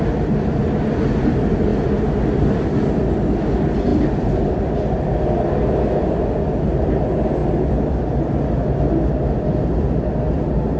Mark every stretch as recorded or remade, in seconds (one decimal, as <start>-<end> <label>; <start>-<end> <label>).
0.0-10.8 recorded